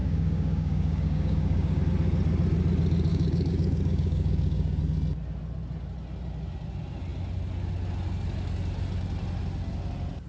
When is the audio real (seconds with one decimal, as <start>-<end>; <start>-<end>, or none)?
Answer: 1.8-3.1; 4.8-10.3